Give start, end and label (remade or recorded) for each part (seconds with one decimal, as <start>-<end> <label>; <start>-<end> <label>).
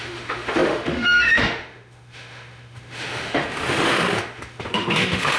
0.0-5.4 remade